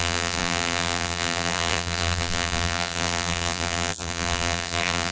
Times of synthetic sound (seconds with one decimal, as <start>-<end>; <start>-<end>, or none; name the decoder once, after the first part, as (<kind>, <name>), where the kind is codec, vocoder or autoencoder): 0.0-5.1 (vocoder, BigVGAN v2)